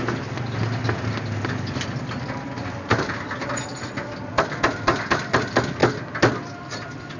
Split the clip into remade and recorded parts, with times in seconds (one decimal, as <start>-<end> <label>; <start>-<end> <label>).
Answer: 0.0-7.2 recorded